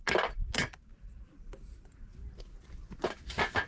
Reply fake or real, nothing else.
real